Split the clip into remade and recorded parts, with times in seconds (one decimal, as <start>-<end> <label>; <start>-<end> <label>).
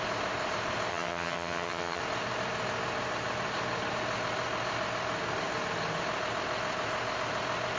0.0-0.9 recorded; 0.9-2.0 remade; 2.0-7.8 recorded